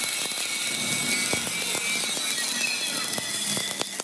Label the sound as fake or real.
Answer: real